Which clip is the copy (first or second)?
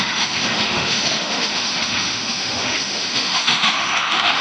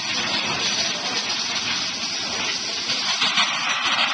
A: first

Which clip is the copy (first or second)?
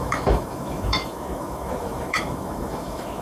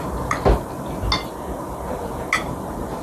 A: first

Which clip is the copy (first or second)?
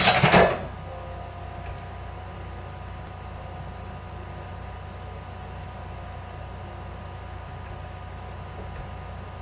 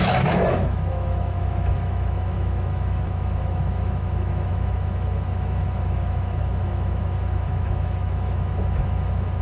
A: second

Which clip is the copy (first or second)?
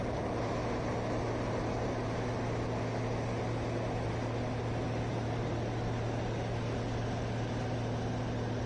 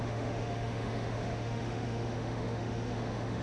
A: second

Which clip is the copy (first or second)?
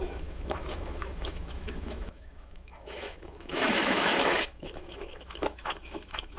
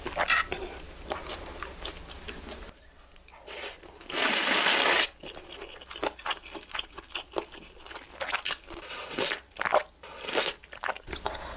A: first